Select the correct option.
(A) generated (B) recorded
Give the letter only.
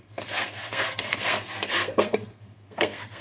A